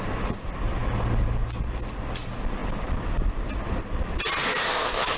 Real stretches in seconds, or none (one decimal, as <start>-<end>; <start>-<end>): 0.0-5.2